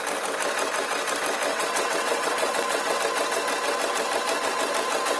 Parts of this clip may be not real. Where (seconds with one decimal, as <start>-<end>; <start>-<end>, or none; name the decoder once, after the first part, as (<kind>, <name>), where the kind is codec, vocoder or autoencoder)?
1.5-3.0 (vocoder, WaveNeXt)

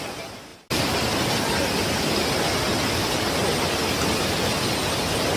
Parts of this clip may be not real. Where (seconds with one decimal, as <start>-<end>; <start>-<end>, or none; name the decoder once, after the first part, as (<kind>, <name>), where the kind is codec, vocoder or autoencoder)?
none